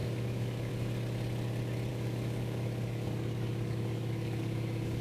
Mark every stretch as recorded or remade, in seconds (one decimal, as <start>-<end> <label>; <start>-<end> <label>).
0.0-0.7 remade; 0.7-1.9 recorded; 1.9-5.0 remade

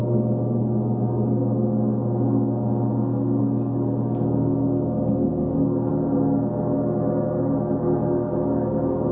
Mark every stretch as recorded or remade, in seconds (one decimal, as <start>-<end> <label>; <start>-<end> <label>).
0.0-5.3 recorded; 5.3-5.9 remade; 5.9-8.0 recorded; 8.0-9.1 remade

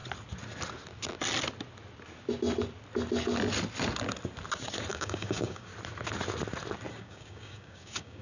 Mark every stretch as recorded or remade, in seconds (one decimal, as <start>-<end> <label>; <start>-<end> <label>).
0.0-4.9 recorded; 4.9-5.7 remade; 5.7-6.9 recorded; 6.9-8.2 remade